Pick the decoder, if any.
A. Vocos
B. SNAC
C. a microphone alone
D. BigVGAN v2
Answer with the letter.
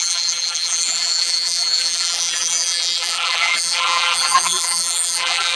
D